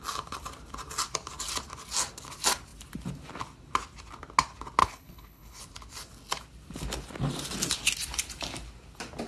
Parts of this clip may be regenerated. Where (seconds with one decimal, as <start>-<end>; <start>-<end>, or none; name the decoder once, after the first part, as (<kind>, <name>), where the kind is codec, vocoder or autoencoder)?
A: 4.8-5.6 (codec, HILCodec)